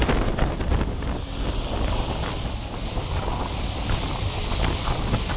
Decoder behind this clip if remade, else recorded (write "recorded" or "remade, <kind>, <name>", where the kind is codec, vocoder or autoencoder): recorded